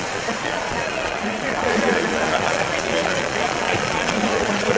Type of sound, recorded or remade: remade